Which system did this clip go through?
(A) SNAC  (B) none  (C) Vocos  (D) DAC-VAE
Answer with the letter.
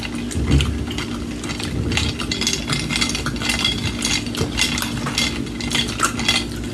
B